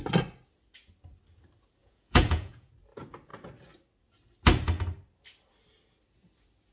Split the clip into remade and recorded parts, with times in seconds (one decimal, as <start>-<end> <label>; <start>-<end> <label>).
0.0-1.8 recorded; 1.8-2.7 remade; 2.7-6.7 recorded